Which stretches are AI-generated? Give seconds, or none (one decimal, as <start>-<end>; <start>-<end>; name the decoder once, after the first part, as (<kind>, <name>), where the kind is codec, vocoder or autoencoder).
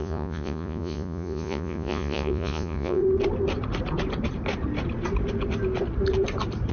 0.0-3.0 (vocoder, Vocos)